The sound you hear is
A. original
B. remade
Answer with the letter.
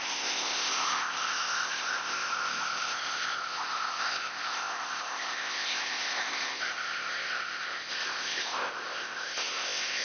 B